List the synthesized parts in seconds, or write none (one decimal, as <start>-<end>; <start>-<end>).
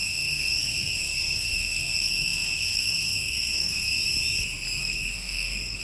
0.0-3.9; 4.8-5.8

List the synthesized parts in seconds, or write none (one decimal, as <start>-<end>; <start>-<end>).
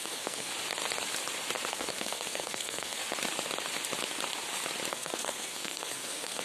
0.0-0.5; 1.7-3.0; 4.9-6.4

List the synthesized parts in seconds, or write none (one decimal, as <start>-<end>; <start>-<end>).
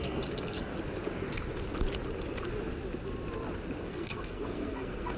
0.0-0.7; 3.8-5.2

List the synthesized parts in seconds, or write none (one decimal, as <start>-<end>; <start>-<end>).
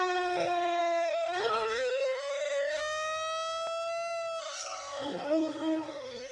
0.0-2.8; 4.4-6.3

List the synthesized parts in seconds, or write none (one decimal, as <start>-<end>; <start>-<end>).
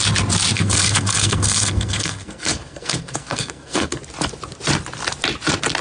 0.5-4.0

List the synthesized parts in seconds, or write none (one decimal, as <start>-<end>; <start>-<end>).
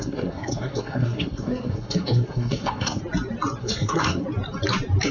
0.0-3.0; 3.6-4.2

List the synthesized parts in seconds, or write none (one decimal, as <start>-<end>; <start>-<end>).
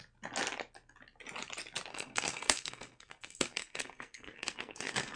1.9-5.2